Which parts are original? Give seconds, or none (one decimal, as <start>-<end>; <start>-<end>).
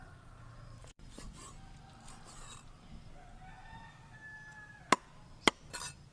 0.0-0.8; 1.5-6.1